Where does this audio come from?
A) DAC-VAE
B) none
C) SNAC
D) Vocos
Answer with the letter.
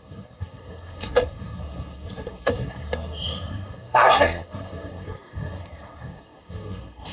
C